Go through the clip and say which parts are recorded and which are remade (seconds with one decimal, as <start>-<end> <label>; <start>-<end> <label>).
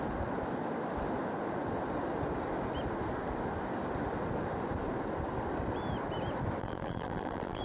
0.0-6.6 recorded; 6.6-7.6 remade